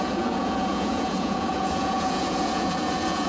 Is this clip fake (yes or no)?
yes